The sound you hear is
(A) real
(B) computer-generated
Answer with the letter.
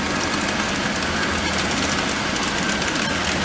A